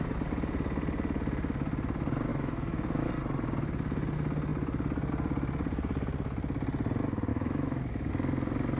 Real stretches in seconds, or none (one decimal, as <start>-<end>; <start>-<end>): 0.0-2.3; 3.1-7.3; 8.1-8.8